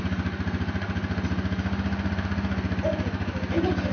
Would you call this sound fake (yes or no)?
no